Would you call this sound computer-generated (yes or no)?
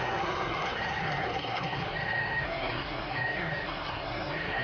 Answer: yes